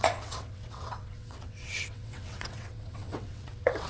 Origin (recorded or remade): remade